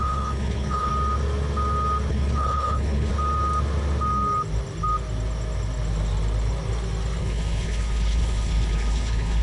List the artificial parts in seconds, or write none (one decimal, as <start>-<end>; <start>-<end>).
0.0-0.9; 2.1-3.1; 7.2-9.4